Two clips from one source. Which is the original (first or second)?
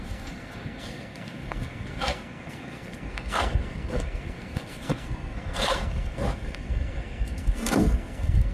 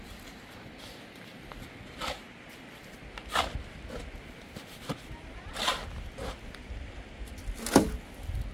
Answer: second